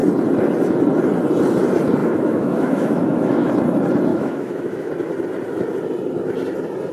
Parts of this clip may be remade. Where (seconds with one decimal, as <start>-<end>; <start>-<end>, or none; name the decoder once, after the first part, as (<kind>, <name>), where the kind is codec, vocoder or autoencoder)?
2.0-3.5 (autoencoder, DAC-VAE); 4.1-4.9